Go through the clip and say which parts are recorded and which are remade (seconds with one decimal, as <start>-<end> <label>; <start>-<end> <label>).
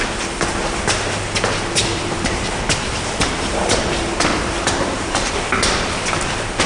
0.0-1.8 recorded; 1.8-5.7 remade; 5.7-6.7 recorded